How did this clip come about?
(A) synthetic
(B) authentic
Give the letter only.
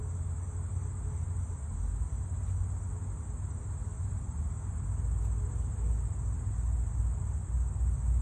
B